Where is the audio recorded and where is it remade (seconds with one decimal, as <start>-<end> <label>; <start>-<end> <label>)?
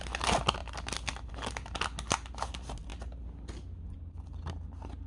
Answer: 0.0-5.1 recorded